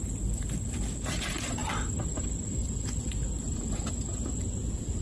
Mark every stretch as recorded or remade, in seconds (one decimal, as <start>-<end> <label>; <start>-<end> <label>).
0.0-5.0 recorded